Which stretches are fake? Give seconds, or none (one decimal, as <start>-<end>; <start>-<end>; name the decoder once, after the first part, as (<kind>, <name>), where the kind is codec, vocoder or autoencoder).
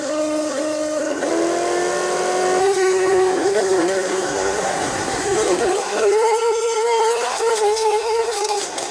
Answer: 0.0-1.3 (codec, SNAC); 2.6-8.9